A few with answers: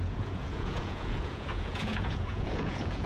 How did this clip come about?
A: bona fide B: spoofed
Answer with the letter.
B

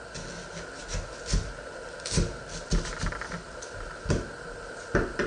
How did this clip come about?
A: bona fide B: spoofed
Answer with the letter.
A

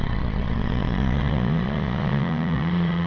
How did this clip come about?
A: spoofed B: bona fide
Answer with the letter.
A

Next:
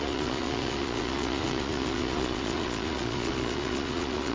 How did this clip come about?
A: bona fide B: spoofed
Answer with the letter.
B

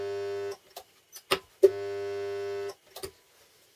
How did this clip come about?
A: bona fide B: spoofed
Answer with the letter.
A